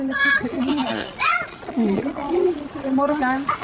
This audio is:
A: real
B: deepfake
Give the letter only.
B